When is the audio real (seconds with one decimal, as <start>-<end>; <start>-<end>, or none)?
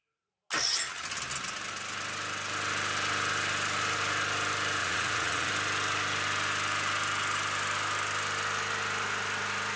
0.0-4.8; 5.5-9.8